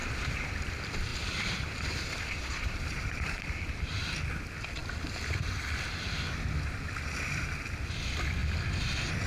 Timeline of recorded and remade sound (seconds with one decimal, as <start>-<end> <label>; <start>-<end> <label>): 0.0-0.5 remade; 0.5-1.1 recorded; 1.1-3.9 remade; 3.9-9.3 recorded